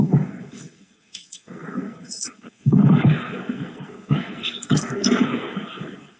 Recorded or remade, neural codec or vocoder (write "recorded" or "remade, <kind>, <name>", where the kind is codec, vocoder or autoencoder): remade, codec, SNAC